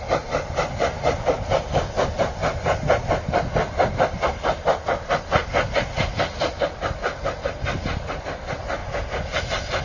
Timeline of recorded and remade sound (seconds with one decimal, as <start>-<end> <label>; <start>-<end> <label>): 0.0-9.8 recorded